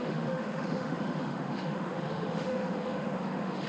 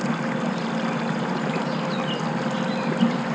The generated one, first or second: first